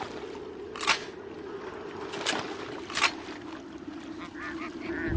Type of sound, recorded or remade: recorded